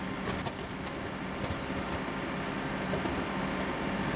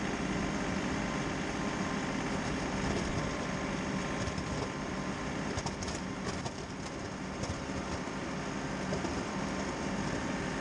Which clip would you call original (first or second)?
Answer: first